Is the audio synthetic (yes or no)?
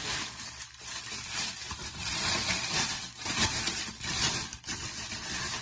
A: no